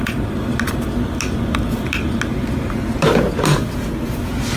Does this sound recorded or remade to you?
recorded